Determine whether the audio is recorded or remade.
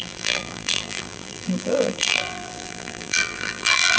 remade